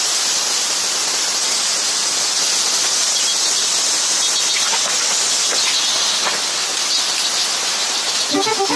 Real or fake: real